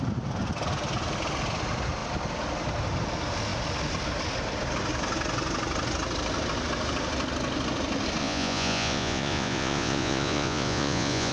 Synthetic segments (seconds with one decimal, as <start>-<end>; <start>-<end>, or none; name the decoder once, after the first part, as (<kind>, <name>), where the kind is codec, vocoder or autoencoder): 8.2-11.3 (vocoder, Vocos)